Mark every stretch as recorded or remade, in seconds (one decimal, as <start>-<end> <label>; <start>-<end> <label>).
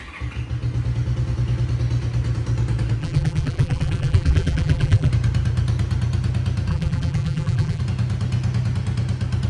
0.0-3.0 recorded; 3.0-5.1 remade; 5.1-6.7 recorded; 6.7-7.8 remade; 7.8-9.5 recorded